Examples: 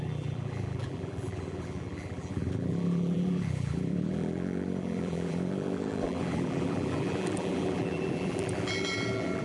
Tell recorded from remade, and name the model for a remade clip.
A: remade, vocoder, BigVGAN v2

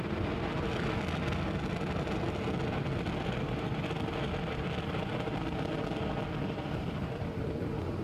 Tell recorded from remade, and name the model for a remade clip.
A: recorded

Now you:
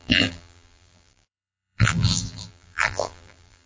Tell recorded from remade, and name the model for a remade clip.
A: remade, vocoder, BigVGAN v2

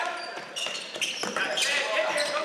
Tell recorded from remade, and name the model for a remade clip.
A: recorded